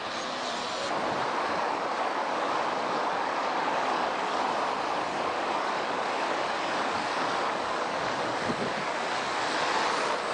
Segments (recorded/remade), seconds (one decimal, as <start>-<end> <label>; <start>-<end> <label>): 0.0-1.2 recorded; 1.2-4.4 remade; 4.4-5.1 recorded; 5.1-9.4 remade; 9.4-10.3 recorded